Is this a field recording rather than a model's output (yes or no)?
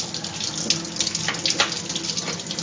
yes